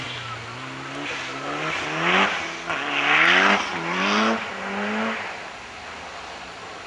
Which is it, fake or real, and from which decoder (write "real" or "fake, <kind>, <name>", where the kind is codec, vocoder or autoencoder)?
real